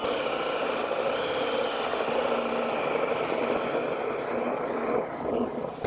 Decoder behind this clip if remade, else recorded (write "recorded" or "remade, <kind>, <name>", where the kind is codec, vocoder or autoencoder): recorded